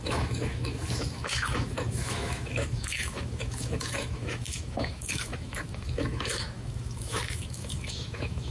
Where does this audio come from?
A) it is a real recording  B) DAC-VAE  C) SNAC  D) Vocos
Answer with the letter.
B